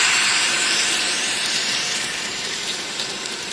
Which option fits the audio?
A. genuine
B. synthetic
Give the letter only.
B